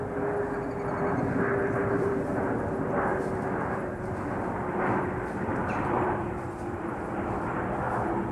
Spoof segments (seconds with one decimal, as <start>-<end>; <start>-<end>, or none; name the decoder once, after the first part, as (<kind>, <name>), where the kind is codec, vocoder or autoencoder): 1.6-2.4 (vocoder, BigVGAN v2); 3.1-7.6